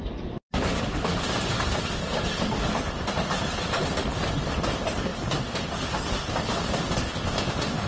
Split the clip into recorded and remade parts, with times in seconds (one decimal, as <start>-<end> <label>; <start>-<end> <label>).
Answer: 0.0-7.9 recorded